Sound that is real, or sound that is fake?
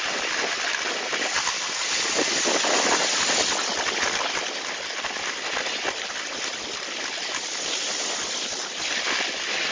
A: real